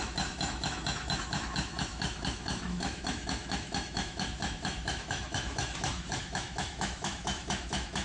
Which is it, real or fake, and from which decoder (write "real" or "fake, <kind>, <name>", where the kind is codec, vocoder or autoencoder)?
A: fake, autoencoder, DAC-VAE